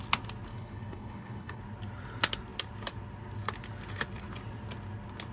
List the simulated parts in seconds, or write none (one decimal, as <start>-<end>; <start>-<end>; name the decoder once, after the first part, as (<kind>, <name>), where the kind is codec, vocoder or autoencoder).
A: 0.5-1.6 (codec, HILCodec)